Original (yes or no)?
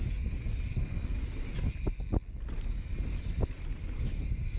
yes